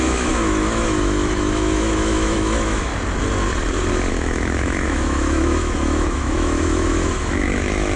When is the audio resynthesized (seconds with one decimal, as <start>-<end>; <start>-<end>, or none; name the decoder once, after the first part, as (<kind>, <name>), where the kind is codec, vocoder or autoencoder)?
0.0-2.9 (autoencoder, DAC-VAE); 4.1-8.0